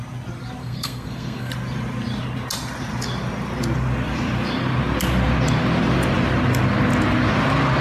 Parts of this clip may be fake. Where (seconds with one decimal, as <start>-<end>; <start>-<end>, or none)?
0.6-1.5